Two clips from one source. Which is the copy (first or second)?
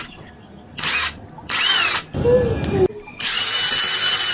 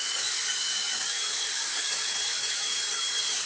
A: second